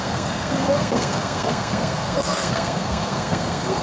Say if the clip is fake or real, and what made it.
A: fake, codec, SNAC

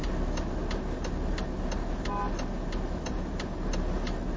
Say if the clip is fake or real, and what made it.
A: real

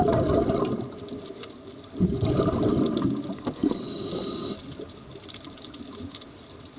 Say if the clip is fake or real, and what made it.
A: real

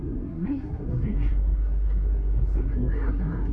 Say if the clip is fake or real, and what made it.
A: fake, codec, SNAC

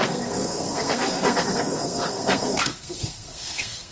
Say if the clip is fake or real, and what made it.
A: fake, codec, SNAC